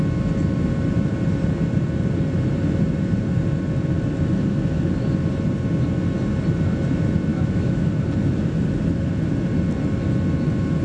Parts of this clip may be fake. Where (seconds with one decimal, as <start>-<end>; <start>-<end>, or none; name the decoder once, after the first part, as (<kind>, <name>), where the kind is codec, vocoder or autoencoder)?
7.3-7.9 (autoencoder, DAC-VAE)